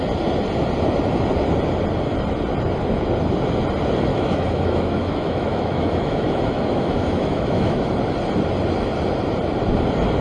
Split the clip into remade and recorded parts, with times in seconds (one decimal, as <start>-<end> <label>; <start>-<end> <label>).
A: 0.0-4.1 recorded; 4.1-8.0 remade; 8.0-10.2 recorded